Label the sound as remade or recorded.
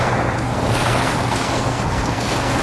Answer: remade